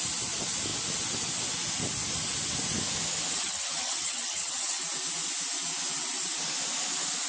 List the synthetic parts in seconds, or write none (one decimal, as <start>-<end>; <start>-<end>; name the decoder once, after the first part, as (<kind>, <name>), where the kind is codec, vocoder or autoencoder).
3.3-4.8 (vocoder, HiFi-GAN)